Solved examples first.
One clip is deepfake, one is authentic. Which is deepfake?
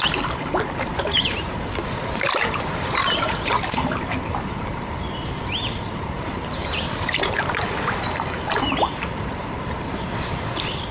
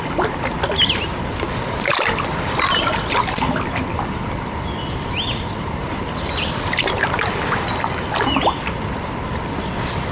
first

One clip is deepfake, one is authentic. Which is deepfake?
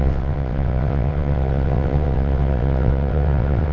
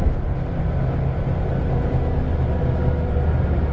first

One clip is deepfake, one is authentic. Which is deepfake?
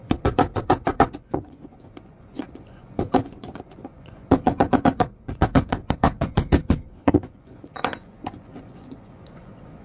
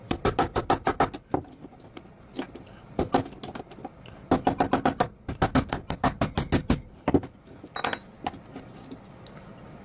first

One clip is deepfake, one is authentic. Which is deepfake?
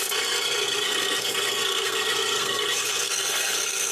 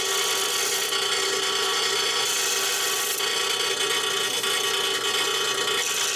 first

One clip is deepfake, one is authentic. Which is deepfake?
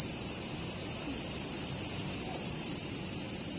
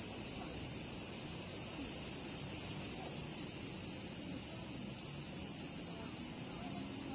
first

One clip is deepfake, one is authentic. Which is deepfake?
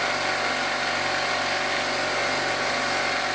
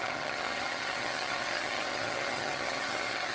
second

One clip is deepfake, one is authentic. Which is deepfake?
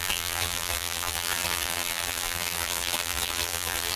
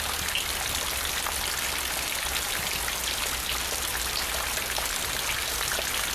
first